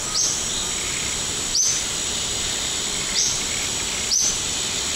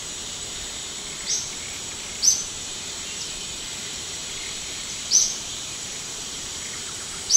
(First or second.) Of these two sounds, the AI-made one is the second